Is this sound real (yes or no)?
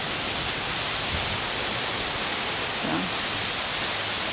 yes